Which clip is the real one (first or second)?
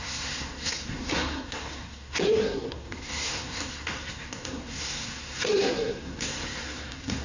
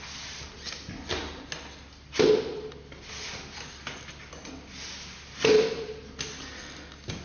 second